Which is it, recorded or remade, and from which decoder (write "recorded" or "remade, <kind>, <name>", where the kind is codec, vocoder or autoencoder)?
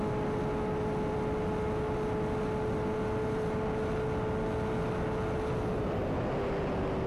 recorded